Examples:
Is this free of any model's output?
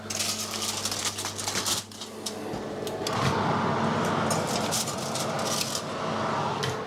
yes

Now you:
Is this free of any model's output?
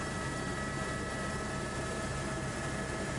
no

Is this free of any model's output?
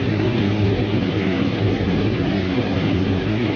no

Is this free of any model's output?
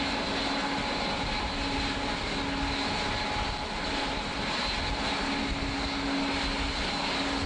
yes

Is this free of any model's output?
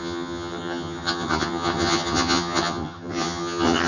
no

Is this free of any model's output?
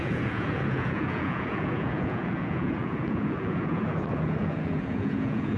no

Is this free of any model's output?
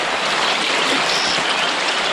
yes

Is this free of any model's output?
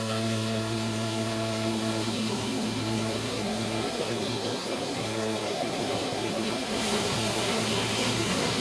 no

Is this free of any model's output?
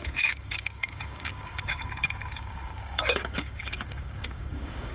no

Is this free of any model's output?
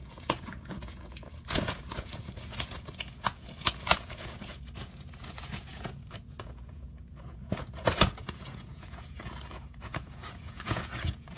no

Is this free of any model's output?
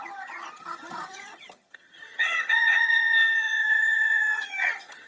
no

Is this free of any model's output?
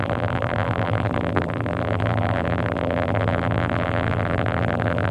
no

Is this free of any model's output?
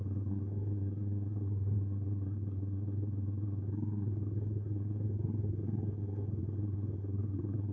no